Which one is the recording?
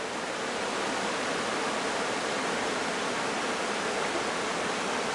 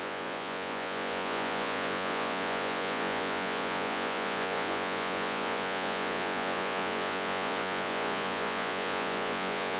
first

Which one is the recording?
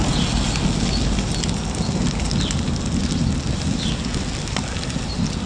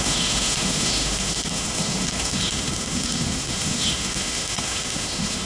first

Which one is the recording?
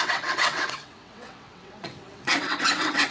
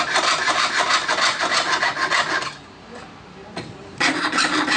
second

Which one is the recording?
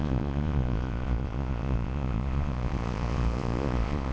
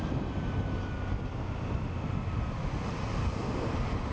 second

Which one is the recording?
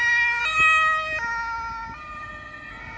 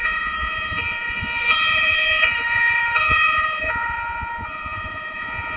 first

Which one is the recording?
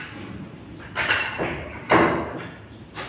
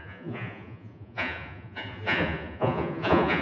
first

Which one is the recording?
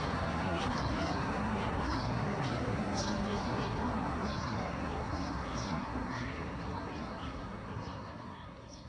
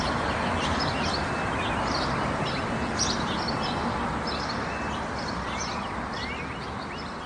second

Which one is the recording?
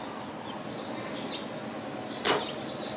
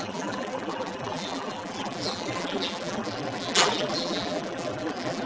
first